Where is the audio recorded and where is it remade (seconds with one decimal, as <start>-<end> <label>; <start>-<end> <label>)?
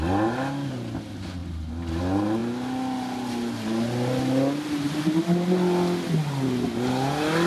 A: 0.0-7.5 recorded